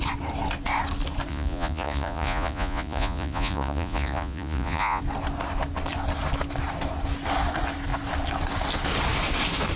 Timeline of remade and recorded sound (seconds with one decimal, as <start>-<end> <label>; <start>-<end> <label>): 0.0-1.3 recorded; 1.3-5.0 remade; 5.0-9.8 recorded